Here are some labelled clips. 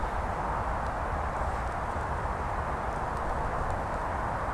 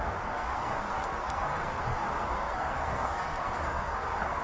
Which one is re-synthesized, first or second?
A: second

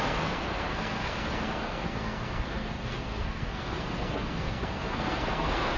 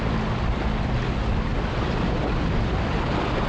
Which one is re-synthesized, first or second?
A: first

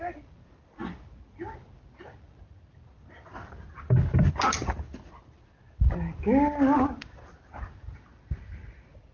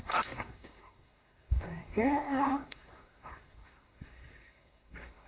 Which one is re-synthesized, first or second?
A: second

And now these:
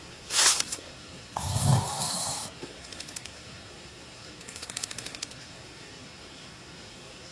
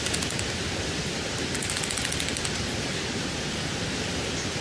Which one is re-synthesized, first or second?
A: first